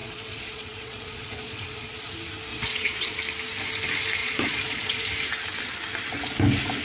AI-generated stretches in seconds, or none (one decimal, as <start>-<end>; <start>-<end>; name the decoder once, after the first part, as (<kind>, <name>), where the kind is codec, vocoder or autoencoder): 0.0-2.1 (vocoder, Vocos); 2.5-3.2; 4.2-5.1